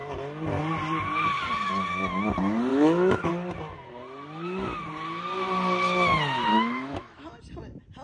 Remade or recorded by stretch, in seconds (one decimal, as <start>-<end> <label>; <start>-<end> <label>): 0.0-2.7 recorded; 2.7-3.3 remade; 3.3-6.5 recorded; 6.5-7.4 remade; 7.4-8.0 recorded